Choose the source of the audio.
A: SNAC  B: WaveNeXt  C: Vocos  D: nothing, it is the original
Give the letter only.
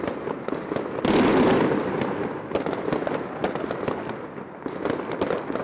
D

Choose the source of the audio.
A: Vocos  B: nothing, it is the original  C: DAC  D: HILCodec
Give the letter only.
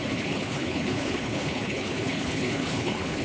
D